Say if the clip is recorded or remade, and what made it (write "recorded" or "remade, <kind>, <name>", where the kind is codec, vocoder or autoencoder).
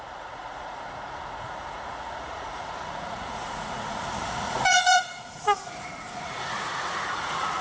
remade, vocoder, Vocos